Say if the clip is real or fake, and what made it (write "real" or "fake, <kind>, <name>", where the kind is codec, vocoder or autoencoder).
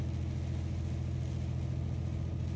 real